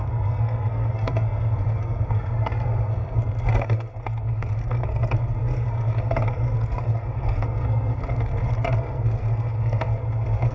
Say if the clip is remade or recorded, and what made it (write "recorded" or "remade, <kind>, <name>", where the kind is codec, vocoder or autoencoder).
remade, codec, SNAC